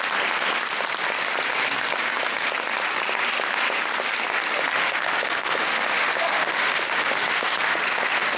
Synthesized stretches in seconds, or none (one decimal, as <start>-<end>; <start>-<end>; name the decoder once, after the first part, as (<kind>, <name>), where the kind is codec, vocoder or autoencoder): 4.8-7.8 (autoencoder, DAC-VAE)